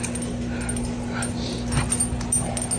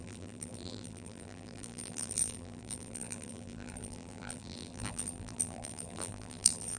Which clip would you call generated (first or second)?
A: second